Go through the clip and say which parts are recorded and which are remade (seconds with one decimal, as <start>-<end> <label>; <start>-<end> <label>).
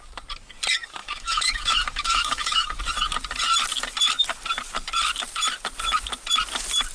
0.0-1.0 recorded; 1.0-2.8 remade; 2.8-6.9 recorded